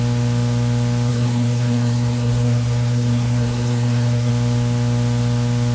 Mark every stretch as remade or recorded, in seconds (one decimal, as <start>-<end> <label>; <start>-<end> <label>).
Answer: 0.0-1.1 recorded; 1.1-4.3 remade; 4.3-5.7 recorded